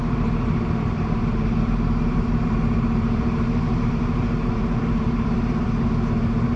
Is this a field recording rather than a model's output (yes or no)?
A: no